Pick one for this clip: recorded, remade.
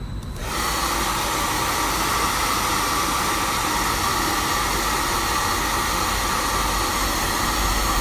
recorded